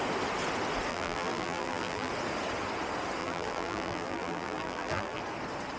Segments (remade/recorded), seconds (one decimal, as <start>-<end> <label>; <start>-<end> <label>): 0.0-0.9 recorded; 0.9-2.1 remade; 2.1-3.2 recorded; 3.2-5.2 remade; 5.2-5.8 recorded